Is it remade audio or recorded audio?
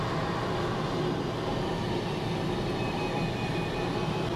recorded